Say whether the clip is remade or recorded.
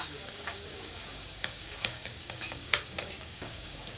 remade